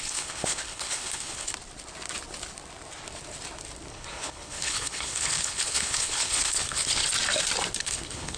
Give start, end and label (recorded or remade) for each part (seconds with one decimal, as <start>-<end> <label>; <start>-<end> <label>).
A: 0.0-1.5 remade; 1.5-3.9 recorded; 3.9-7.0 remade; 7.0-7.8 recorded; 7.8-8.4 remade